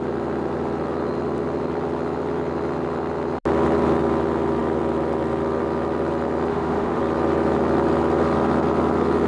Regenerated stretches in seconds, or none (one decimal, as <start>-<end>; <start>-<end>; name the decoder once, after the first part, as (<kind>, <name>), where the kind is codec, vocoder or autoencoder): 6.5-7.0 (autoencoder, DAC-VAE)